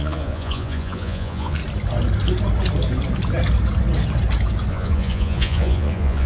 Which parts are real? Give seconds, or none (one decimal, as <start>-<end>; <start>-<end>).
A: 1.6-4.7